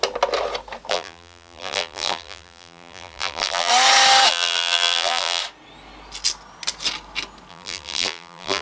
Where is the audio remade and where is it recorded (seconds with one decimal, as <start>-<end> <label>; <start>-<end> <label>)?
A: 0.0-0.9 recorded; 0.9-3.7 remade; 3.7-4.3 recorded; 4.3-5.4 remade; 5.4-7.5 recorded; 7.5-8.6 remade